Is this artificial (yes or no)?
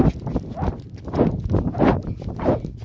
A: no